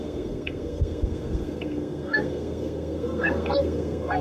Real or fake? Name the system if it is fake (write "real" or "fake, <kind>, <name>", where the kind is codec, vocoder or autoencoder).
fake, codec, SNAC